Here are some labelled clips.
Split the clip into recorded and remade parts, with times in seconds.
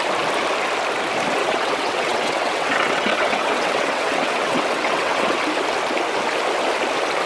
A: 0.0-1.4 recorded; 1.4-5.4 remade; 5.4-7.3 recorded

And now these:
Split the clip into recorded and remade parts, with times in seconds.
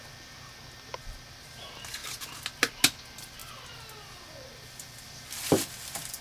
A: 0.0-6.2 recorded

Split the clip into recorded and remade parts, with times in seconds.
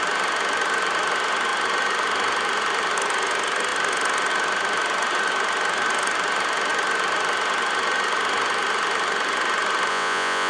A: 0.0-9.9 recorded; 9.9-10.5 remade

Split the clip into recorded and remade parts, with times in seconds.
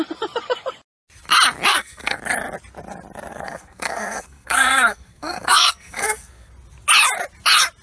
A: 0.0-1.7 recorded; 1.7-2.2 remade; 2.2-3.3 recorded; 3.3-6.5 remade; 6.5-7.8 recorded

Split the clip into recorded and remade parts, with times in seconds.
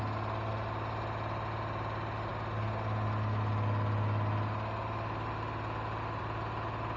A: 0.0-7.0 recorded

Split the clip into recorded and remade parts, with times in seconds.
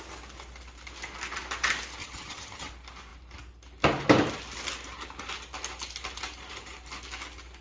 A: 0.0-2.0 recorded; 2.0-2.7 remade; 2.7-7.6 recorded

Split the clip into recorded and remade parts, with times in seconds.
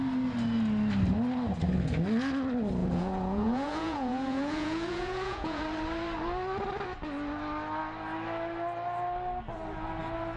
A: 0.0-2.8 recorded; 2.8-5.6 remade; 5.6-10.4 recorded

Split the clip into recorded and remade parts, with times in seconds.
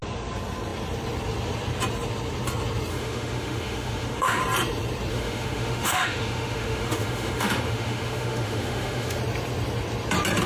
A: 0.0-2.9 recorded; 2.9-4.4 remade; 4.4-5.1 recorded; 5.1-9.2 remade; 9.2-10.5 recorded